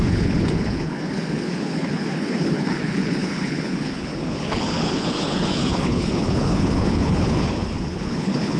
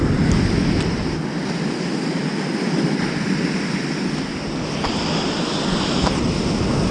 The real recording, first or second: second